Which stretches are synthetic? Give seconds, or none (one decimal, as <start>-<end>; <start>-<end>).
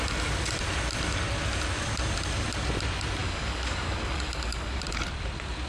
3.2-4.8